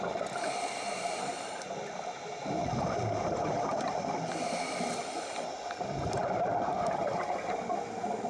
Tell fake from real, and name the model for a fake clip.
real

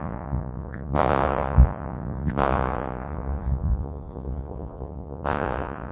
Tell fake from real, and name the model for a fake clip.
fake, vocoder, Vocos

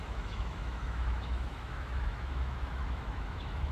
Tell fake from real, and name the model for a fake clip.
fake, autoencoder, DAC-VAE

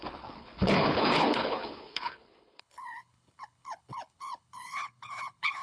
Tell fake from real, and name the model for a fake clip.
fake, codec, HILCodec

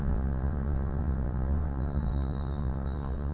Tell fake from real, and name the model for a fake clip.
fake, vocoder, WaveNeXt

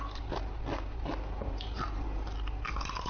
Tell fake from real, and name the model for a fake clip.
real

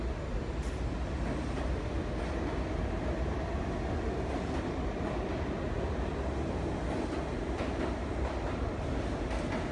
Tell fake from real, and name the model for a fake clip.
real